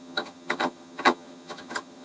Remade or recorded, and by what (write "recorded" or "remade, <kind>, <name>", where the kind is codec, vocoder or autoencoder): remade, vocoder, HiFi-GAN